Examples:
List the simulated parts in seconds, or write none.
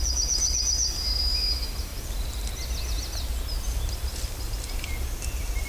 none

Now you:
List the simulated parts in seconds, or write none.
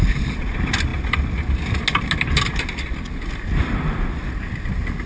none